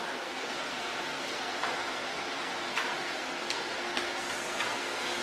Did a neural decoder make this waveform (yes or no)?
yes